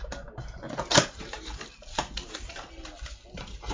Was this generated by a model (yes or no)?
no